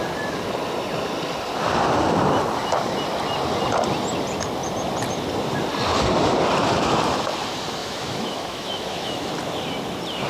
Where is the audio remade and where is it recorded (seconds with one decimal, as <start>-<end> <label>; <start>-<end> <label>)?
0.0-7.8 recorded; 7.8-9.3 remade; 9.3-10.3 recorded